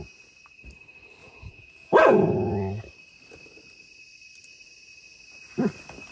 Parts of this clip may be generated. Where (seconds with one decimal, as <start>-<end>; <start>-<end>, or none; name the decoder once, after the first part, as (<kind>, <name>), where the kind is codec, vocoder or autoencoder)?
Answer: 1.2-2.3 (vocoder, Vocos)

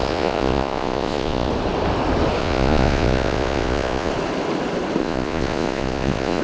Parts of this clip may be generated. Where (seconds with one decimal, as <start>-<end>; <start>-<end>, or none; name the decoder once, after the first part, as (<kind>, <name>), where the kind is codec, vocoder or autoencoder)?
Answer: 0.0-1.5 (vocoder, Vocos); 2.4-4.1; 5.0-6.4

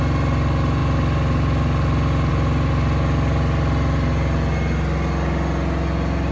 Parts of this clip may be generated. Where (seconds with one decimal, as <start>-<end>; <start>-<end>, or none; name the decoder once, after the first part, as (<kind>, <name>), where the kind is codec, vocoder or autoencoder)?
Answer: none